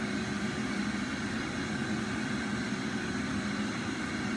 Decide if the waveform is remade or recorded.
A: recorded